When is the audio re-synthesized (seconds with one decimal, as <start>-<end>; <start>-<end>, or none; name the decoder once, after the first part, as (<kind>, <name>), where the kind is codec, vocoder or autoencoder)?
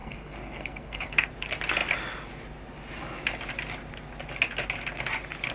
0.0-1.3 (codec, SNAC)